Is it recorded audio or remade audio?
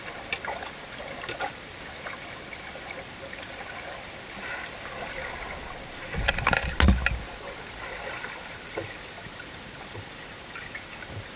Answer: recorded